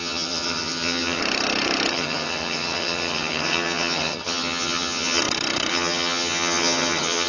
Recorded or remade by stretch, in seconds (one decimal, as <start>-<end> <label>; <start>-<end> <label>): 0.0-1.2 remade; 1.2-1.9 recorded; 1.9-5.2 remade; 5.2-5.7 recorded; 5.7-7.3 remade